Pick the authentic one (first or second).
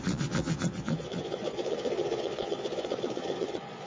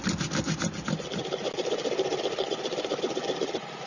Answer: second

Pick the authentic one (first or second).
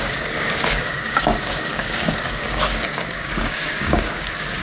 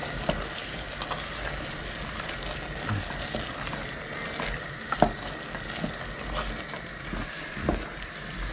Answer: second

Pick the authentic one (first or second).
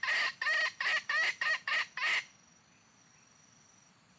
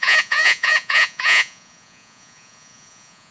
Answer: first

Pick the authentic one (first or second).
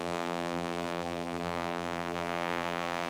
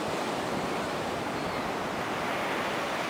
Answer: second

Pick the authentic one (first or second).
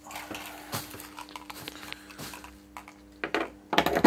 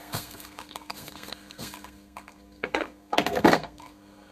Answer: first